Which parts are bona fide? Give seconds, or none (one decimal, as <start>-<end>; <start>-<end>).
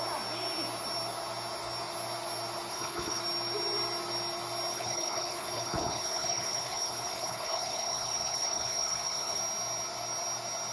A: 0.0-2.7; 3.2-4.7; 9.4-10.7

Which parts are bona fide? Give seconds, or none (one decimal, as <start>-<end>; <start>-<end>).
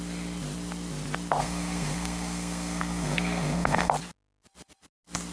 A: 0.0-1.4; 3.9-5.3